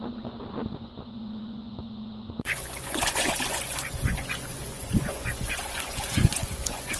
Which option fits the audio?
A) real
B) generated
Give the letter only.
B